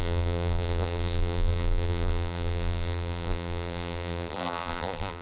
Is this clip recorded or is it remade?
remade